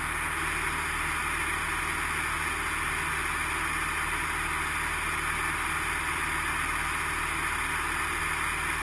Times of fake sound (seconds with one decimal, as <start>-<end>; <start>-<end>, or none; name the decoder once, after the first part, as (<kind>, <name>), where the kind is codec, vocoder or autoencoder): none